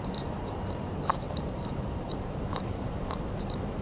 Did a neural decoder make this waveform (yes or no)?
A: yes